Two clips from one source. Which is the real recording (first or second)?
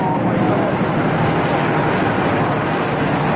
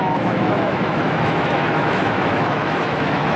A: first